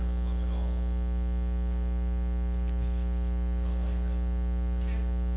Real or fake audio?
real